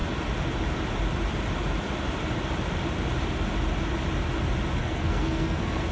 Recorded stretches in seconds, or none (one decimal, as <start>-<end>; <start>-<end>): 0.0-4.8